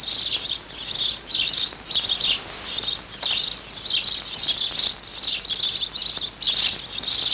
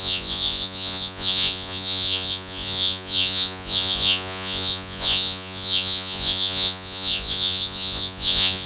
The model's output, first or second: second